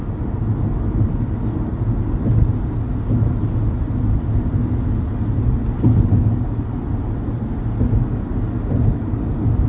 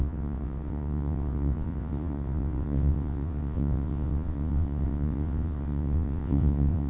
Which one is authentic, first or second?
first